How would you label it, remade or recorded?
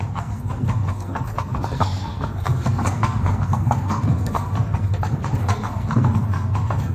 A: remade